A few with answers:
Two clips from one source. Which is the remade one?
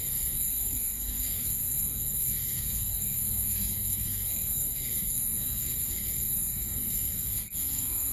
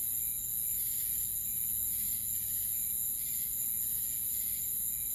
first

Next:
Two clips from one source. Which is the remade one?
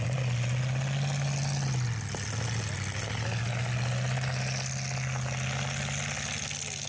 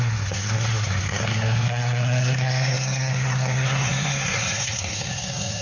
second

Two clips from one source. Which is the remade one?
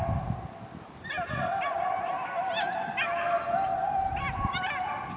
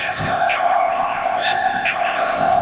second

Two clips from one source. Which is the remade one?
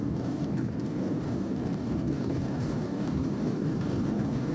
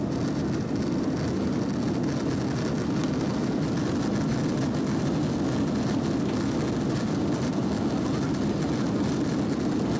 first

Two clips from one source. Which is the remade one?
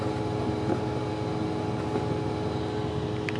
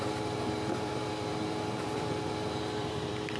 second